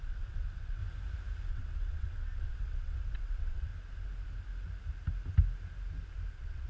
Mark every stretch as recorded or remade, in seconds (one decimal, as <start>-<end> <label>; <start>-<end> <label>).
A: 0.0-0.8 remade; 0.8-1.5 recorded; 1.5-3.7 remade; 3.7-6.3 recorded; 6.3-6.7 remade